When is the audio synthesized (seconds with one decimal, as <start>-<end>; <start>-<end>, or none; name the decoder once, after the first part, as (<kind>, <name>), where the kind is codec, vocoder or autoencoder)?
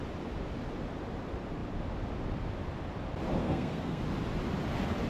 3.4-4.0 (codec, SNAC)